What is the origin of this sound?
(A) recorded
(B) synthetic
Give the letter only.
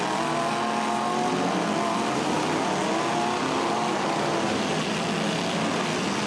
A